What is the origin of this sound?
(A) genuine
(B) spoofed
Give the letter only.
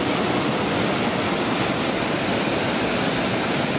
A